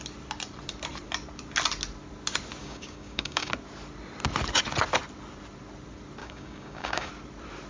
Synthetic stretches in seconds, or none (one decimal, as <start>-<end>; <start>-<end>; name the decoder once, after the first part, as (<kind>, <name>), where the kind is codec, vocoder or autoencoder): 2.6-3.5 (codec, DAC); 6.2-7.1